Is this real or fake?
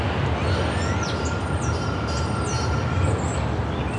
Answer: real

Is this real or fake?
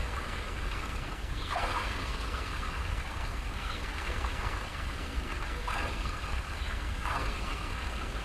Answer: fake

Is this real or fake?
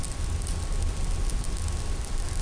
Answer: real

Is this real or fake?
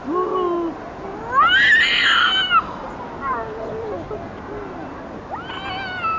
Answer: real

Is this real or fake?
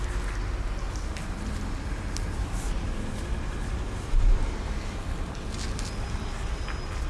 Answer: real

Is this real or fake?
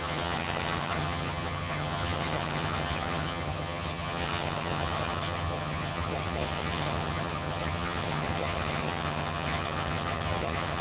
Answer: fake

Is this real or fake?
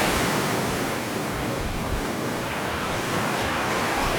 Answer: fake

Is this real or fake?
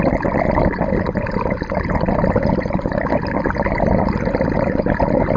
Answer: real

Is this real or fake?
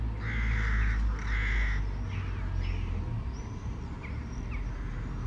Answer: real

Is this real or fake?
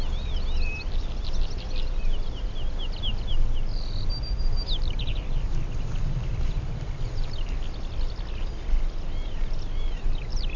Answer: real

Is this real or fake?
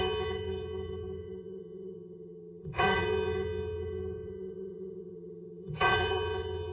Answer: fake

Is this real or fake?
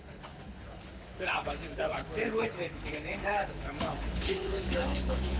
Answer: fake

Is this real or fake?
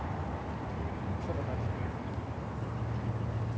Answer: real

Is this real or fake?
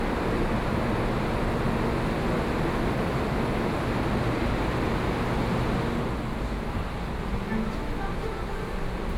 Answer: real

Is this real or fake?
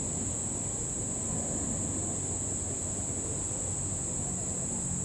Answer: real